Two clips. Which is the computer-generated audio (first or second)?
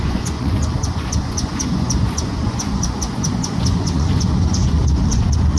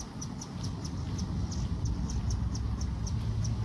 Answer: first